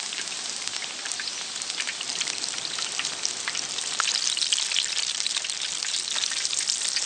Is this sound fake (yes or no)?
yes